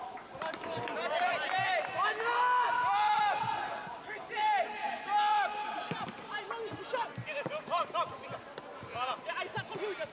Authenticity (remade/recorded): recorded